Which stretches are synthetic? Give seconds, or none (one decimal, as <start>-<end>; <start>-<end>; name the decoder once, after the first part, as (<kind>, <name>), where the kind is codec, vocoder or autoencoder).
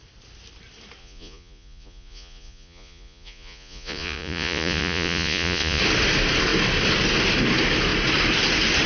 1.0-5.8 (vocoder, Vocos)